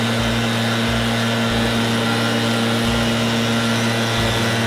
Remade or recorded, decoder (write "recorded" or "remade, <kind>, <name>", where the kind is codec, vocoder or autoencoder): recorded